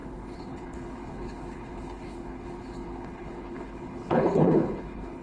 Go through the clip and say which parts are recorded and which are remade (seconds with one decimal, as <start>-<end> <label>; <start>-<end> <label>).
0.0-5.2 remade